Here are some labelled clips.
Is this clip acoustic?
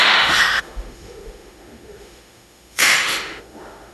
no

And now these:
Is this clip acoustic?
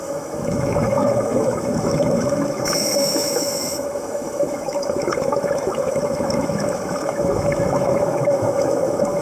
no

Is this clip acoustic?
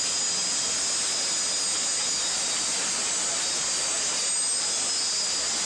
yes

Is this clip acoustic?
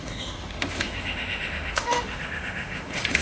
no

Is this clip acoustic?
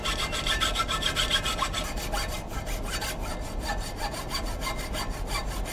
yes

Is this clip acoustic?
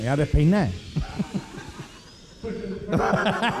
yes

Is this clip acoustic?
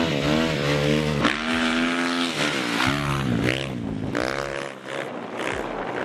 yes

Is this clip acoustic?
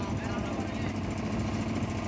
yes